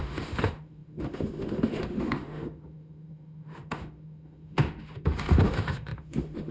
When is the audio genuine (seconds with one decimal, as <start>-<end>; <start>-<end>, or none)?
none